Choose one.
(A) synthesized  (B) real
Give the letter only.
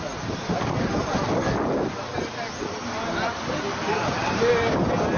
B